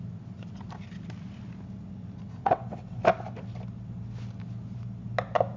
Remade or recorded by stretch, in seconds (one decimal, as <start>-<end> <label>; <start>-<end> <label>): 0.0-2.4 recorded; 2.4-3.0 remade; 3.0-5.6 recorded